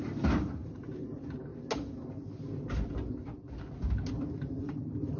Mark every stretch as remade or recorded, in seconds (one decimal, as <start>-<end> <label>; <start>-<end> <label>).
0.0-1.5 remade; 1.5-4.6 recorded; 4.6-5.2 remade